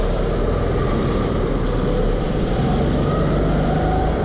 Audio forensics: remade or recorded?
recorded